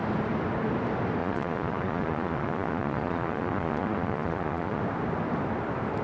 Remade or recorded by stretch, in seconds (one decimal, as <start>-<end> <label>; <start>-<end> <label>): 0.0-1.2 recorded; 1.2-4.8 remade; 4.8-6.0 recorded